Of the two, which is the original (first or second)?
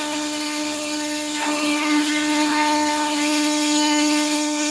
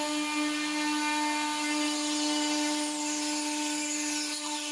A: second